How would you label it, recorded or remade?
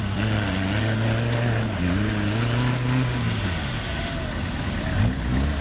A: recorded